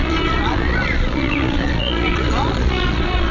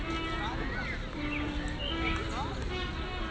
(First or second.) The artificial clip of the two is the first